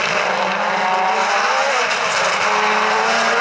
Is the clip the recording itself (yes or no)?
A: yes